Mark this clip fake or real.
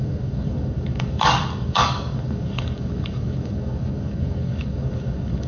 fake